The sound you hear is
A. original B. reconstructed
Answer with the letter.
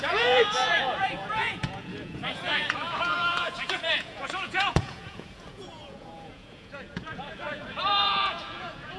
B